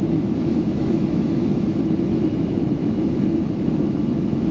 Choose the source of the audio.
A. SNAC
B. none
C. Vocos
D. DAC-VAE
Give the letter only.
D